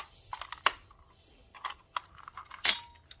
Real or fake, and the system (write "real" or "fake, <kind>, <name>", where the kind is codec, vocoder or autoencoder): real